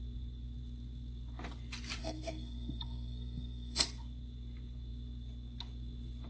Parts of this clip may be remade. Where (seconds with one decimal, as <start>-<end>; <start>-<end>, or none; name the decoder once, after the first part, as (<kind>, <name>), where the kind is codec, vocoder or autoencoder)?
2.0-3.8 (codec, SNAC)